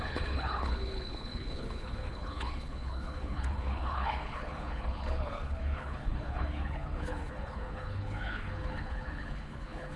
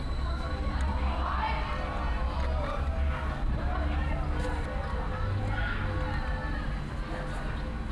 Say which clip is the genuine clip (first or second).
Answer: second